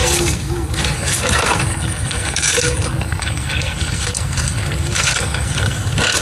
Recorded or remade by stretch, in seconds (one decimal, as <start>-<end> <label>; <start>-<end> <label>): 0.0-6.2 remade